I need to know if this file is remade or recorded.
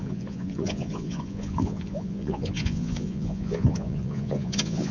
remade